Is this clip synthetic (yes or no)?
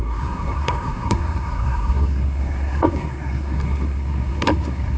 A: yes